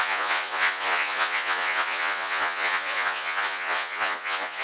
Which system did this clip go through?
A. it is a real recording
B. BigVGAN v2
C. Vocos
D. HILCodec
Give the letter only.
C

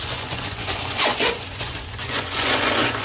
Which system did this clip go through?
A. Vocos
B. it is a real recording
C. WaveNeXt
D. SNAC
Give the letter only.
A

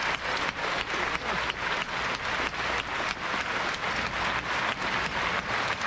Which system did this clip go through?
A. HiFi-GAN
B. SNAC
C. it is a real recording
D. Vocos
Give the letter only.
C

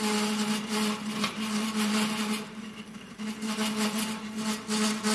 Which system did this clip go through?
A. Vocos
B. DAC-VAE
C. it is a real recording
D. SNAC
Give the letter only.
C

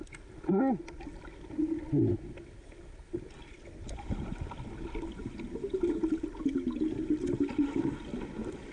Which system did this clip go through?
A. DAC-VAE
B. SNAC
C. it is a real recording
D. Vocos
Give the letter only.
C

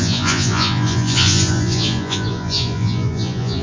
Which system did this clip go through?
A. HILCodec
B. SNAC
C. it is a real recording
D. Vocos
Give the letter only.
D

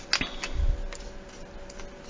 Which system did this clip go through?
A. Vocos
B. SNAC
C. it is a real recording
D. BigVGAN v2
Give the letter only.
C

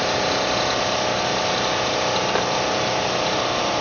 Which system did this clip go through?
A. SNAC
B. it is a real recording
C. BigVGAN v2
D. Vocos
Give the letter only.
B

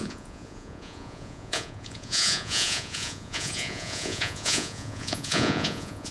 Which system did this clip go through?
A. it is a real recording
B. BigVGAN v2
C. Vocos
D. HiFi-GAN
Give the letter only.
C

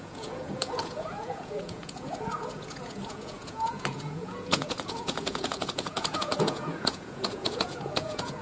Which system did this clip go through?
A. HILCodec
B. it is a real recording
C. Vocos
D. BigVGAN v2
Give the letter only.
C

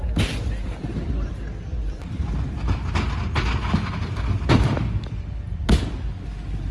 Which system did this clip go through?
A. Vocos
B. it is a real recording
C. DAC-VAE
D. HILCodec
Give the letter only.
B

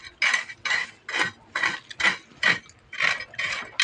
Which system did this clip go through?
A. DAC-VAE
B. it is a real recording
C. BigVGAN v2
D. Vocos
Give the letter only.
B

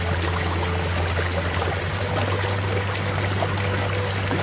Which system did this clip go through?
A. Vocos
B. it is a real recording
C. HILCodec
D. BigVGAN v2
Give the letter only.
B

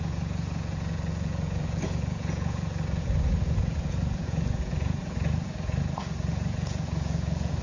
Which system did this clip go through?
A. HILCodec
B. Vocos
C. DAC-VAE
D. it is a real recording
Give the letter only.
B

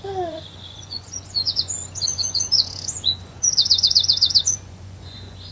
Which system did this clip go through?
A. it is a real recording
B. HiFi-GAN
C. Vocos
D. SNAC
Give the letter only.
C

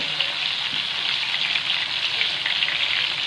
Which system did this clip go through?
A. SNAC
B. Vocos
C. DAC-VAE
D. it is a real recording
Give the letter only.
D